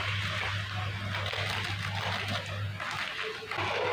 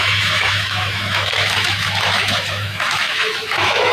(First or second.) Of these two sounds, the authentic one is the first